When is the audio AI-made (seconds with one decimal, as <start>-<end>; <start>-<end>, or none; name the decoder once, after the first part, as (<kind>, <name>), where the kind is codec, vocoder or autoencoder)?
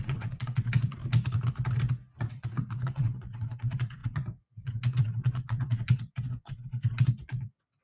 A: 0.0-1.0 (vocoder, WaveNeXt); 2.2-7.8